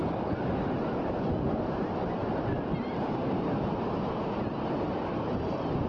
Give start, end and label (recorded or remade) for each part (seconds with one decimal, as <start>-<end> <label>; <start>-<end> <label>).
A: 0.0-5.9 recorded